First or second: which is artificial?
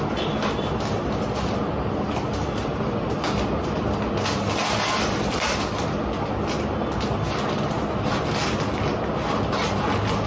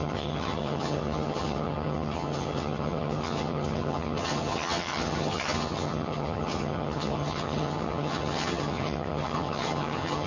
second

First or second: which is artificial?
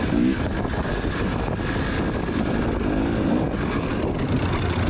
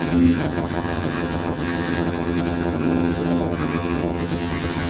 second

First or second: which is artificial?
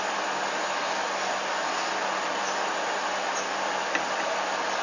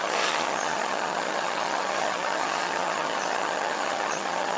second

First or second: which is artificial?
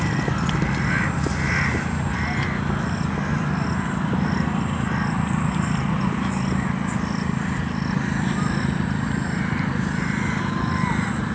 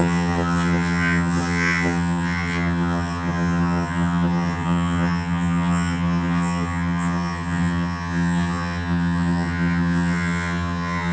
second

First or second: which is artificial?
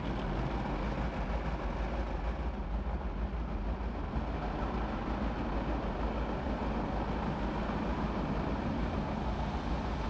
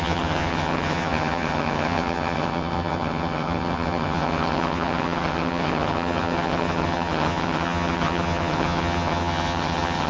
second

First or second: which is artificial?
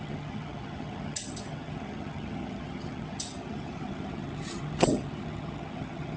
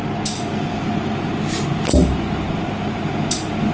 first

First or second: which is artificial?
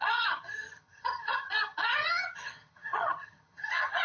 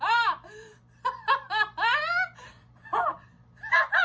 first